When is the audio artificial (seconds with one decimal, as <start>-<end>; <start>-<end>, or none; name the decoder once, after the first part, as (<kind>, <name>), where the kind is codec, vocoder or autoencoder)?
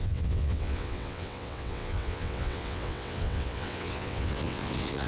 0.0-5.1 (vocoder, WaveNeXt)